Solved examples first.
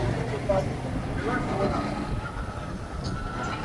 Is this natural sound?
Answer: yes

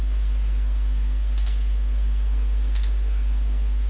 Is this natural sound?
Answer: no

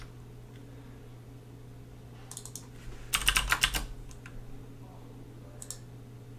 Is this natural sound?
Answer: yes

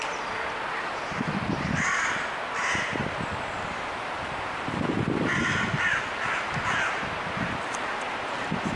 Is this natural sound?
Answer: yes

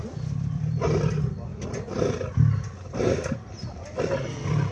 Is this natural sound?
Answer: yes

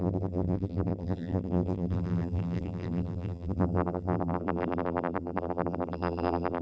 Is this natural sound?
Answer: no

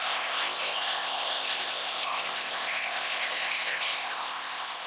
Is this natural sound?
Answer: no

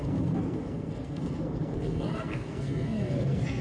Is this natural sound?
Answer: no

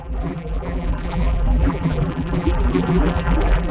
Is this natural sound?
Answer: no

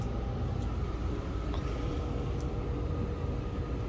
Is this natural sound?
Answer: yes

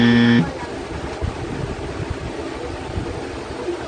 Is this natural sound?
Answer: yes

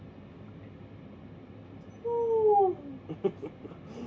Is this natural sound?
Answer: yes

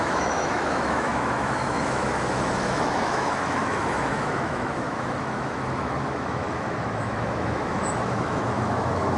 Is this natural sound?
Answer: no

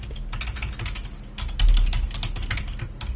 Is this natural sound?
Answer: yes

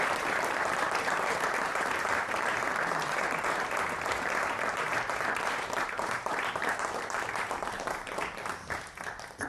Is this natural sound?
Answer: no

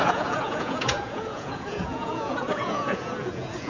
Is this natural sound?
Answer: no